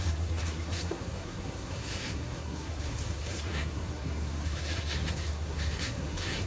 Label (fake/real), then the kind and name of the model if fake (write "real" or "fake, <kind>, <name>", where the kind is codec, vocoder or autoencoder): fake, codec, SNAC